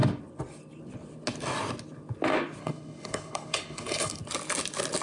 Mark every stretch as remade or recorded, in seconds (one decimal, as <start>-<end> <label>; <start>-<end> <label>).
0.0-2.6 recorded; 2.6-4.2 remade; 4.2-5.0 recorded